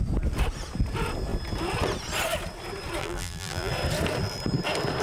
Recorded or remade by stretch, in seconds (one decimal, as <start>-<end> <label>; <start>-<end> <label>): 0.0-3.0 recorded; 3.0-3.7 remade; 3.7-5.0 recorded